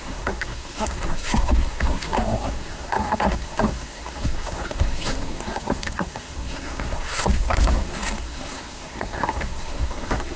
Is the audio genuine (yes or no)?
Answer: no